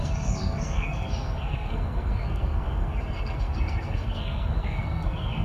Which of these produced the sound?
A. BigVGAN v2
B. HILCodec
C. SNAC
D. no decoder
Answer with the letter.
C